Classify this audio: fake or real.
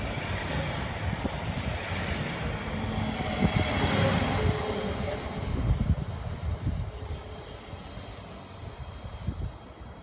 real